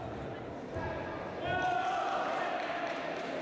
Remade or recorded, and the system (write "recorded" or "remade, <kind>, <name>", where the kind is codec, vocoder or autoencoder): recorded